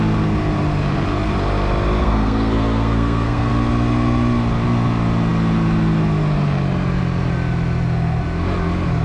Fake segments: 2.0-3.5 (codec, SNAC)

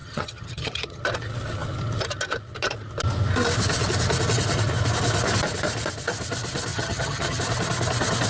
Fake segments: 0.0-1.0 (vocoder, HiFi-GAN); 6.7-7.4

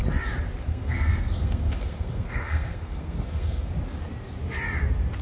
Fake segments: 0.7-3.7 (codec, SNAC)

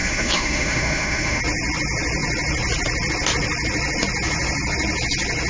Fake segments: 0.0-1.4 (autoencoder, DAC-VAE)

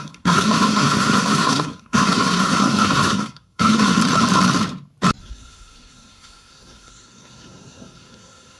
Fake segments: 0.0-4.0 (codec, SNAC); 5.2-8.6

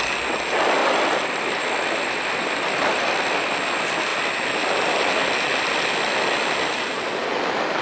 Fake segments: 0.8-3.5 (vocoder, BigVGAN v2)

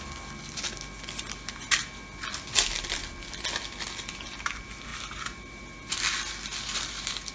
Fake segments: none

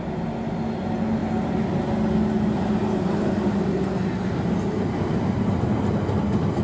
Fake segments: none